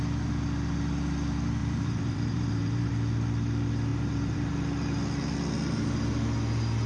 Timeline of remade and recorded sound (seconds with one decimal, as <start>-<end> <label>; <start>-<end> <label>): 0.0-1.6 recorded; 1.6-2.9 remade; 2.9-3.9 recorded; 3.9-4.5 remade; 4.5-6.9 recorded